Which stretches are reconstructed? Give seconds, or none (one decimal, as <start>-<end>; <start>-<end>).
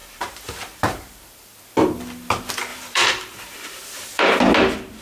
0.0-1.7; 2.7-4.4